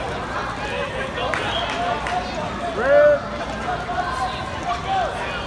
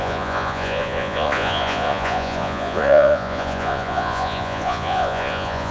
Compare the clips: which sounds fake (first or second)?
second